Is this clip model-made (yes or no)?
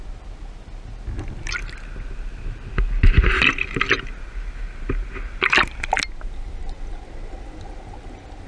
no